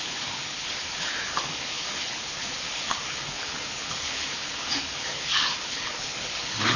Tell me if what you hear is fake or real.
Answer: fake